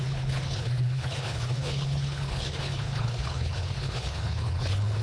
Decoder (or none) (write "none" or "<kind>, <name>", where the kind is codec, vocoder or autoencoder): codec, HILCodec